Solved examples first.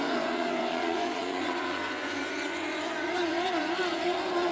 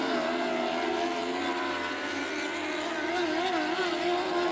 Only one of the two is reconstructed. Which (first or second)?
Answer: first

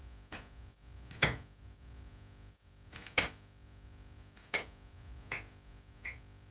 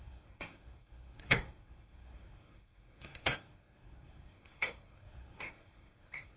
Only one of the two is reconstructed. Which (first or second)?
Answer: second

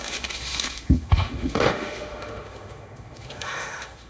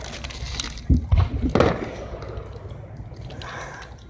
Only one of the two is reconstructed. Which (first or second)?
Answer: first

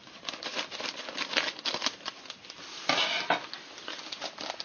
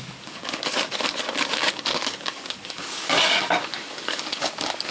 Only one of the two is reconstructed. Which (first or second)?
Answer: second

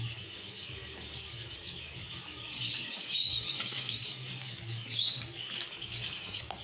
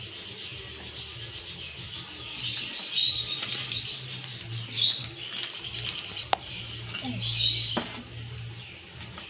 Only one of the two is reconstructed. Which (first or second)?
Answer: first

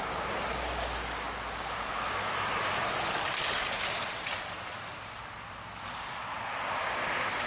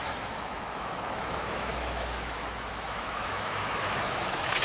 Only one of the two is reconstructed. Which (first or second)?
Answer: second